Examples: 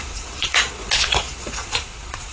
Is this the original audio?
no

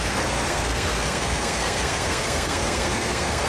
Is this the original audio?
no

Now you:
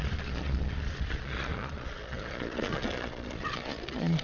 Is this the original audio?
no